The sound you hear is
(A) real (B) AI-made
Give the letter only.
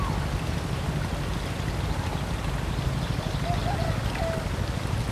A